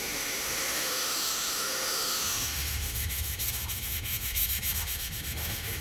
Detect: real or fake fake